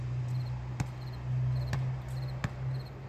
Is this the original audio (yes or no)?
yes